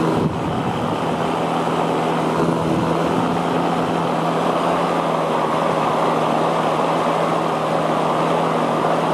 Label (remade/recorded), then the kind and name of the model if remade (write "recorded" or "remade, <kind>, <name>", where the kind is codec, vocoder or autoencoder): recorded